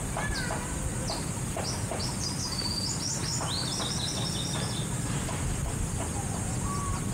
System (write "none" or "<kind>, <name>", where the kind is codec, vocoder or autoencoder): none